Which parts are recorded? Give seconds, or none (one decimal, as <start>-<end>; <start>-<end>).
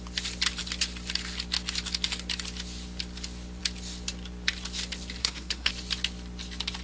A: 0.0-5.2; 5.7-6.8